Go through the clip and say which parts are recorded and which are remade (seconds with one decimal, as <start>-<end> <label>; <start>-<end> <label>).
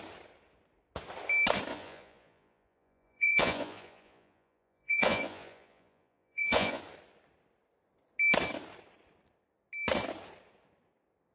0.0-1.7 recorded; 1.7-6.8 remade; 6.8-11.3 recorded